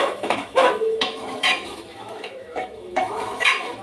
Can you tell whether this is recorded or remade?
remade